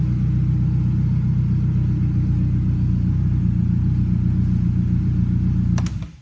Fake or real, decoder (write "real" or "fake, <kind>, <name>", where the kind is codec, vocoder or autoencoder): real